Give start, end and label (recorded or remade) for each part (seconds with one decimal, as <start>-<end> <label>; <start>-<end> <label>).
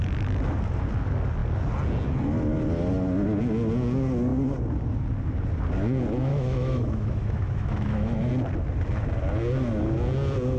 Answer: 0.0-6.3 recorded; 6.3-8.3 remade; 8.3-10.6 recorded